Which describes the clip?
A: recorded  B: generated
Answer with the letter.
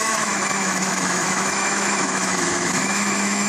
B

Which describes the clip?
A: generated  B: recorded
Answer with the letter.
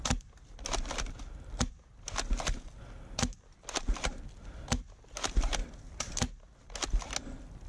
B